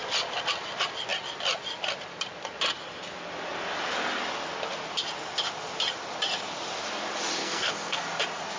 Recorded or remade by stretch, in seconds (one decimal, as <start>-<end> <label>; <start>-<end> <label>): 0.0-7.4 recorded; 7.4-8.0 remade; 8.0-8.6 recorded